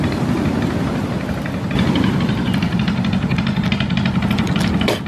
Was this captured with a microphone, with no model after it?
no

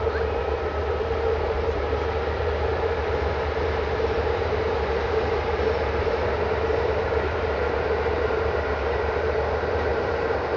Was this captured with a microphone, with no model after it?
no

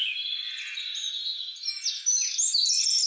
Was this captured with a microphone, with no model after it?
yes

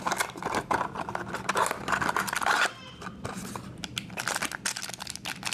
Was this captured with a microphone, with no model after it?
yes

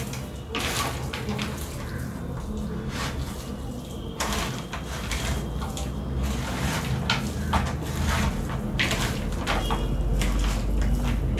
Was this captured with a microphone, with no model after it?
yes